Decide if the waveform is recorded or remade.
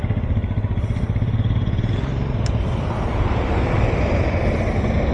recorded